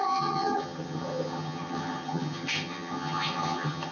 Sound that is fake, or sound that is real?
fake